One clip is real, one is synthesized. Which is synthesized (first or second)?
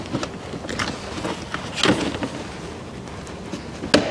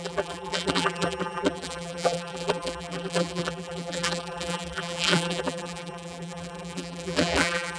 second